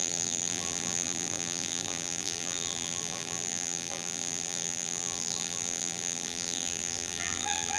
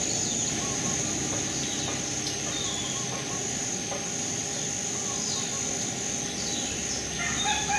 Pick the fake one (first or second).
first